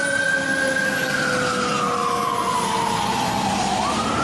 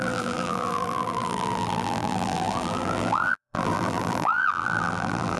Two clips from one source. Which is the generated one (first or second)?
second